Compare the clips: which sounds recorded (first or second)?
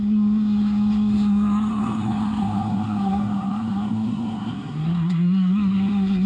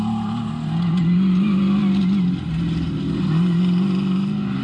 second